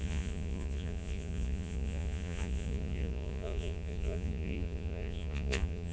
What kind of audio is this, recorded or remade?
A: remade